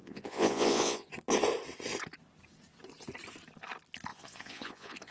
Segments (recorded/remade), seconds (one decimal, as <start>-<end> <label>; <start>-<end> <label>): 0.0-1.1 remade; 1.1-4.1 recorded; 4.1-5.1 remade